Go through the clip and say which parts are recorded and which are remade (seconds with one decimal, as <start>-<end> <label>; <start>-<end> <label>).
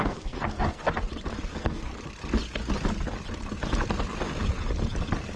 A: 0.0-0.8 remade; 0.8-1.5 recorded; 1.5-1.9 remade; 1.9-5.4 recorded